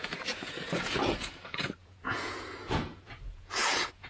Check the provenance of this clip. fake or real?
fake